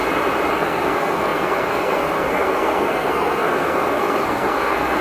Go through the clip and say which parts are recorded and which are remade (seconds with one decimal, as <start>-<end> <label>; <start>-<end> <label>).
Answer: 0.0-0.5 recorded; 0.5-5.0 remade